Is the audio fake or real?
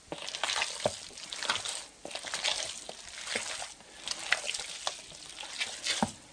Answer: real